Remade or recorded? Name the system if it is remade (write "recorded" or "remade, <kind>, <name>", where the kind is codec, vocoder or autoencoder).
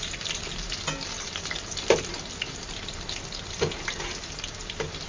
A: recorded